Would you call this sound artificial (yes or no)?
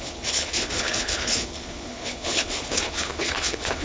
yes